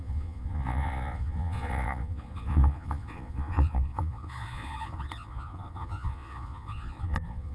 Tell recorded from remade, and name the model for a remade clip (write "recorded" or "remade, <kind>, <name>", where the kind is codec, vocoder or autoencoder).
remade, vocoder, Vocos